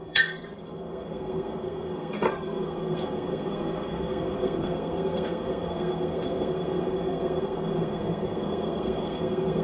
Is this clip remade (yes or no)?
yes